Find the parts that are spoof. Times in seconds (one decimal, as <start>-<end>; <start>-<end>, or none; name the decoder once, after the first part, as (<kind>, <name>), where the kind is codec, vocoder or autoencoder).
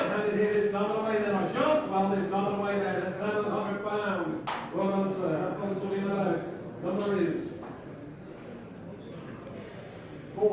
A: 5.5-6.1 (vocoder, BigVGAN v2)